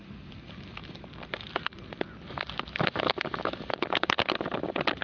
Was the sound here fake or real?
real